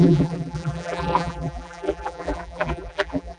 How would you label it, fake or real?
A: fake